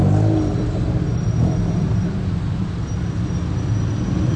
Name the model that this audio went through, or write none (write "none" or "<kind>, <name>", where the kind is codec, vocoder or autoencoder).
none